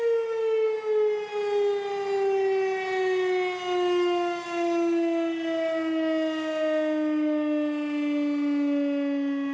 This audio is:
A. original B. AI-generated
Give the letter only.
A